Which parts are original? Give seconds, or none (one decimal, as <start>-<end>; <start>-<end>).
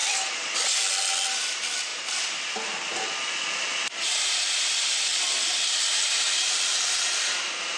0.8-1.9; 5.6-7.8